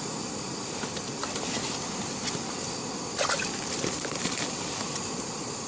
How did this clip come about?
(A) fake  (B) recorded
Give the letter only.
A